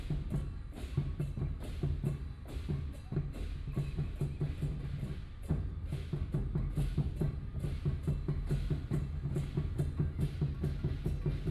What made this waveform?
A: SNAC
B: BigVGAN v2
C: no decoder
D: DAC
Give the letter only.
C